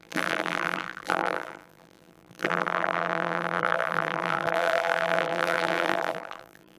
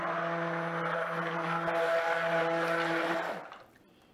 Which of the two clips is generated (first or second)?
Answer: first